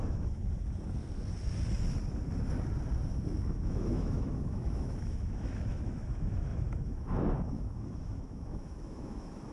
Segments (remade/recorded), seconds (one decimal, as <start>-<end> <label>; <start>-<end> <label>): 0.0-0.4 remade; 0.4-3.4 recorded; 3.4-9.5 remade